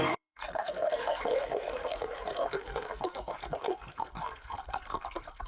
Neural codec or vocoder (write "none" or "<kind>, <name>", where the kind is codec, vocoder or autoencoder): codec, SNAC